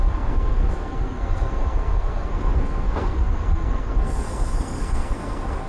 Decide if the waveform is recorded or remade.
remade